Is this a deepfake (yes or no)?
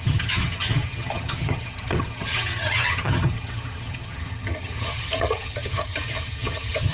yes